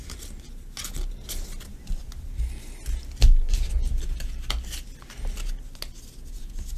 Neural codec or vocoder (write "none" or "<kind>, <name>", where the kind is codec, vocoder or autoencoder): none